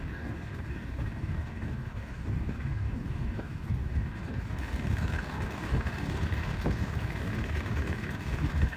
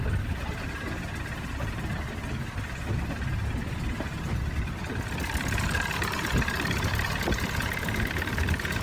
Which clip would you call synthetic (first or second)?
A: first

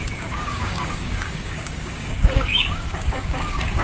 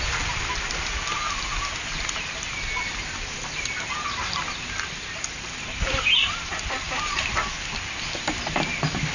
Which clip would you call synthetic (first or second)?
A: first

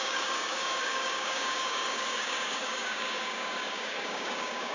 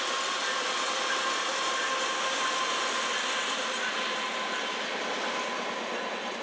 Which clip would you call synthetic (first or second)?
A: first